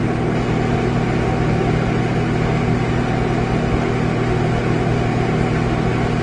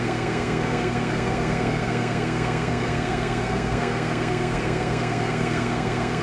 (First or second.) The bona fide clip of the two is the first